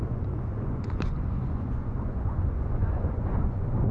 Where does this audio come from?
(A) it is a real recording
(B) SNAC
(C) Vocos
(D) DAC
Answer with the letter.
C